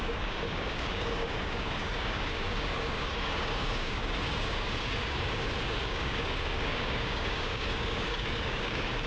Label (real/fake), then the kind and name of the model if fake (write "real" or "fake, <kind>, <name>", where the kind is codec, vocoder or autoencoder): fake, codec, DAC